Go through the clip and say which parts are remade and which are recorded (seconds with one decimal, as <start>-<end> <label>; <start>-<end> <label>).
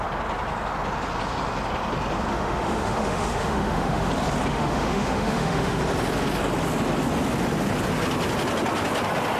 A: 0.0-2.3 recorded; 2.3-4.1 remade; 4.1-4.5 recorded; 4.5-5.8 remade; 5.8-9.4 recorded